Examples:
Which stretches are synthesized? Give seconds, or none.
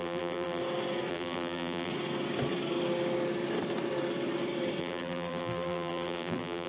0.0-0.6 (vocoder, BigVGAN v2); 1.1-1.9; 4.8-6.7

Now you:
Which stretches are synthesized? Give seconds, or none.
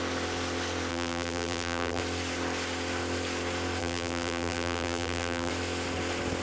0.9-2.0 (vocoder, BigVGAN v2); 3.8-5.5